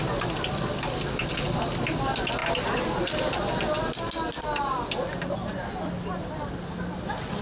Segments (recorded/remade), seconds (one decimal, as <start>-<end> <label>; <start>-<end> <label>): 0.0-7.4 recorded